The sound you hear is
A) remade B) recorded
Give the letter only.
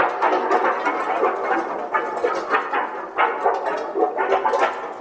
B